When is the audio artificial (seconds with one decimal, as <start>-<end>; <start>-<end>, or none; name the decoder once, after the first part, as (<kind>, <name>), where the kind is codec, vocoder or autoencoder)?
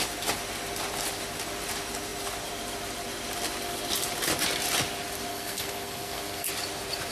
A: 5.3-6.5 (codec, SNAC)